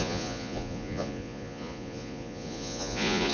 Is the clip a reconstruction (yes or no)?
yes